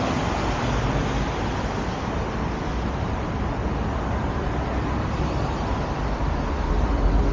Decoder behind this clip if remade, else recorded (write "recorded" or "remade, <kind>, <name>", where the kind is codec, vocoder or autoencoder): recorded